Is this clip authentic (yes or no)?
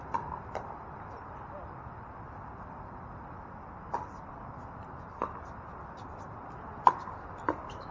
yes